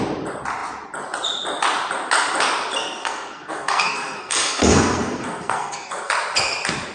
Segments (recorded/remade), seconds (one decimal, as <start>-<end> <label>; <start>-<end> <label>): 0.0-2.8 recorded; 2.8-6.1 remade; 6.1-6.9 recorded